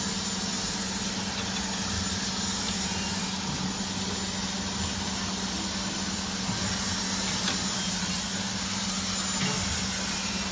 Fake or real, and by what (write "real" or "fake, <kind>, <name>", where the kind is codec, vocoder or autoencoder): real